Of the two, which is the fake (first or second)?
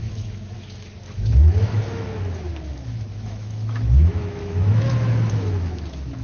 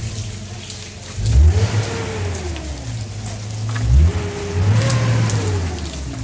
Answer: first